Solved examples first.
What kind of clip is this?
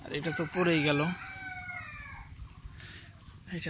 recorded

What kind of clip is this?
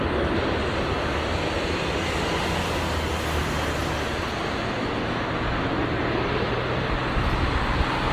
recorded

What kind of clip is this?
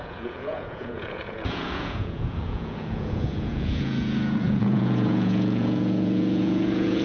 remade